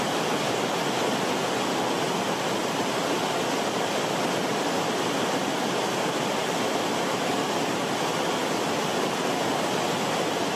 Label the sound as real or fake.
real